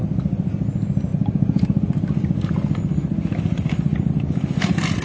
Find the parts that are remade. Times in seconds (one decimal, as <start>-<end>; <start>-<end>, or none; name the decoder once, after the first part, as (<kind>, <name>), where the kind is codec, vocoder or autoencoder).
none

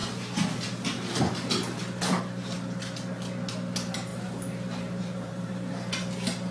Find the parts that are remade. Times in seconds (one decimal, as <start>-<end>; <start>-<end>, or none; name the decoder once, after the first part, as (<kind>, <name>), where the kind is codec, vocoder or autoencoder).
4.1-5.7 (vocoder, BigVGAN v2)

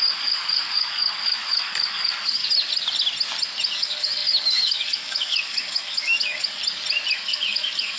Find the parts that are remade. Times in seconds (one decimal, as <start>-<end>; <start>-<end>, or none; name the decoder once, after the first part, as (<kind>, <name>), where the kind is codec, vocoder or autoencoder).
0.0-2.4 (codec, DAC); 3.7-6.6; 7.1-8.0

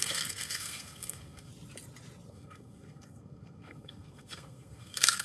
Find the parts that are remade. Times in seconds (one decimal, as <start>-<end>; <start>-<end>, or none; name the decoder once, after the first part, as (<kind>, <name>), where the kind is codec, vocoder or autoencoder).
0.0-1.5 (codec, SNAC); 2.3-5.2

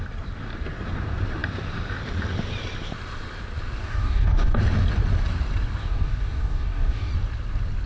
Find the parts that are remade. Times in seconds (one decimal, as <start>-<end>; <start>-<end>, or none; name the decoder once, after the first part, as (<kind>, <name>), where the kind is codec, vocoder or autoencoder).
3.8-4.6 (codec, DAC); 5.8-7.1

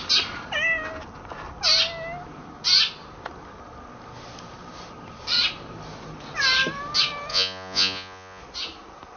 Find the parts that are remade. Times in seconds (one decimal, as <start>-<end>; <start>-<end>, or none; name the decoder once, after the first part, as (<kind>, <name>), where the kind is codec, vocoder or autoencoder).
7.3-8.4 (vocoder, Vocos)

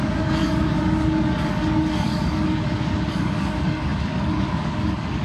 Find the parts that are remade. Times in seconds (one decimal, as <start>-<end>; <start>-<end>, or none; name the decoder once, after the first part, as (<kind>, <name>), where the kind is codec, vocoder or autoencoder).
0.0-5.2 (codec, DAC)